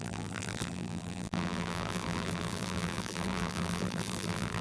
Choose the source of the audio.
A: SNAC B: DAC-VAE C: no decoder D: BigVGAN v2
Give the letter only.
D